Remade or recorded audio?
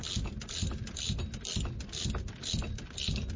recorded